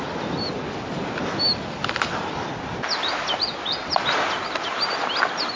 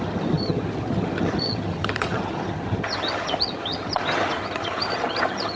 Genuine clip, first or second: first